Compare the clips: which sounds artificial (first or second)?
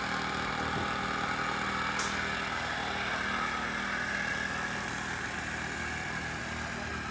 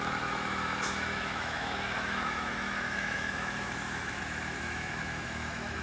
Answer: second